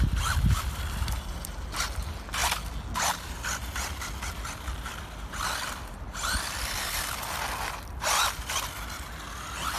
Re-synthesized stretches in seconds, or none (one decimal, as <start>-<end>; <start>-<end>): none

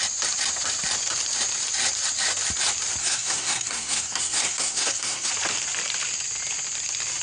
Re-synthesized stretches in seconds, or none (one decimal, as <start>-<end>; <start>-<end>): 3.0-5.3

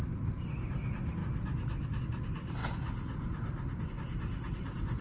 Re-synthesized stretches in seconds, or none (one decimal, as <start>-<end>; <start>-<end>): 0.0-1.2; 2.0-2.6; 3.9-5.0

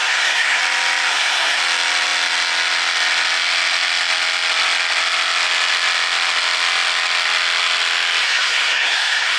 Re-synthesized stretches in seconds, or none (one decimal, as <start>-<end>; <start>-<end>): 0.0-0.6; 1.1-1.6; 8.2-9.4

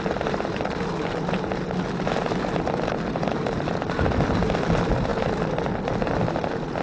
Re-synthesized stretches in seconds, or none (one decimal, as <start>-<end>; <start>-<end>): none